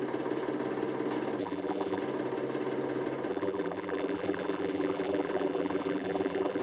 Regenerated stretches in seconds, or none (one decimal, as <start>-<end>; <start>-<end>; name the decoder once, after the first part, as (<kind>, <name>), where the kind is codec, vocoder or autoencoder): 1.4-2.0 (vocoder, BigVGAN v2); 3.3-6.6